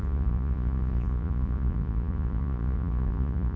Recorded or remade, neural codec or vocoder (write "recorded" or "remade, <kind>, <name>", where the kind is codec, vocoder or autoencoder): remade, vocoder, Vocos